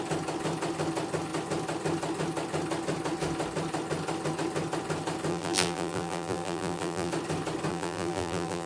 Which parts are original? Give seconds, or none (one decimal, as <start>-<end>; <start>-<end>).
0.0-5.3; 7.1-7.7